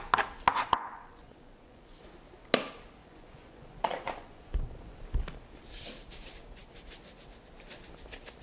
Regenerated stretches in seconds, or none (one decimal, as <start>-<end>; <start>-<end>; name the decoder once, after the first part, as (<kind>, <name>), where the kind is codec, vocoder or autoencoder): 0.5-2.0 (vocoder, Vocos); 3.0-5.0